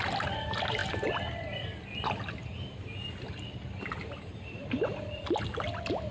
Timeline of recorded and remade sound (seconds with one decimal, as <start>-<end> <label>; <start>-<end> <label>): 0.0-6.1 recorded